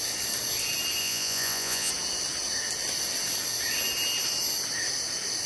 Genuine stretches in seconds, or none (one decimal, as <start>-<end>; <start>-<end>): 0.0-1.0; 1.9-5.5